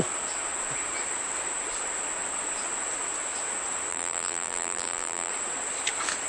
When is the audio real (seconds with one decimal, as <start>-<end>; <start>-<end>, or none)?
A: 0.0-3.9; 5.3-6.3